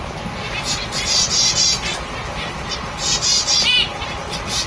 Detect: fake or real real